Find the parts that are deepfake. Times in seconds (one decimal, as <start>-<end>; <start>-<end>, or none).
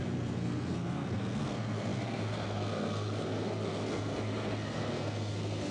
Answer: 0.0-5.7